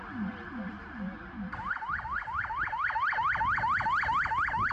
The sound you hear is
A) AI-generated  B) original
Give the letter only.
B